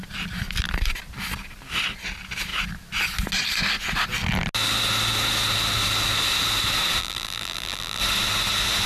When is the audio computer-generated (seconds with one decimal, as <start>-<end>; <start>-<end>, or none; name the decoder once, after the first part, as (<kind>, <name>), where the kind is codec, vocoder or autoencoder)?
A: 7.0-8.0 (vocoder, BigVGAN v2)